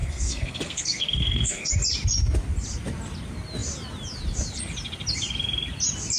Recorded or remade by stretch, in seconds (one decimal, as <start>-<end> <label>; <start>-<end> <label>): 0.0-1.7 remade; 1.7-6.2 recorded